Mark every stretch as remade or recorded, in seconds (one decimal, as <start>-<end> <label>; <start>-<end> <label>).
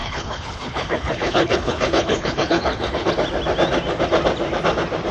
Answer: 0.0-3.1 remade; 3.1-5.1 recorded